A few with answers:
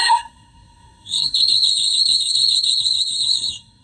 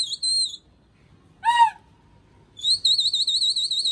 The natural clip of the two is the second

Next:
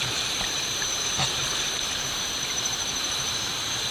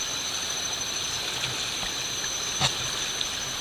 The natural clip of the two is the second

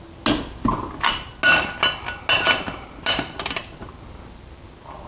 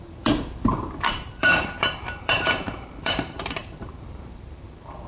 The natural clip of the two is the first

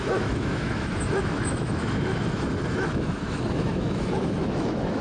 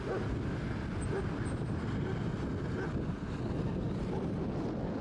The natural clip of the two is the second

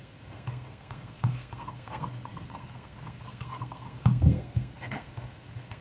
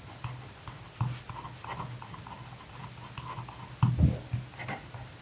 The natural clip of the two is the second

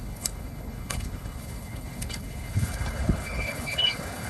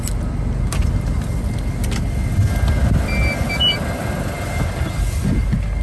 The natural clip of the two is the second